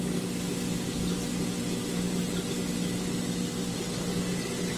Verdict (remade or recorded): recorded